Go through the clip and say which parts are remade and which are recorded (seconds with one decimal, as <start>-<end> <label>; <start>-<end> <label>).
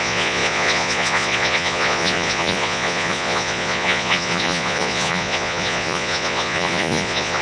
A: 0.0-7.4 remade